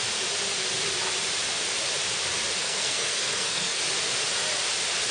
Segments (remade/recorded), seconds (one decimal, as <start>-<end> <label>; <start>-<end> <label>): 0.0-2.6 recorded; 2.6-3.8 remade; 3.8-5.1 recorded